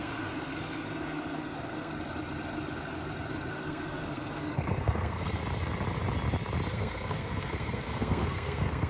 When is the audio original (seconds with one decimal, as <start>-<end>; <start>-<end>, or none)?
1.9-3.5; 5.4-6.7